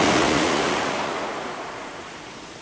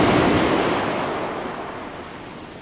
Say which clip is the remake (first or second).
first